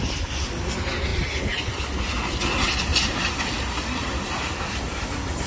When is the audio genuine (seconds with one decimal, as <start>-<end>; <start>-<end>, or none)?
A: 0.0-2.9; 4.8-5.5